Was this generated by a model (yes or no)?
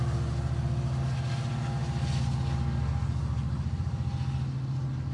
no